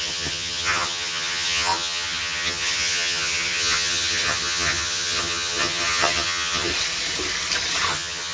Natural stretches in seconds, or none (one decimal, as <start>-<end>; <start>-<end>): 6.7-7.9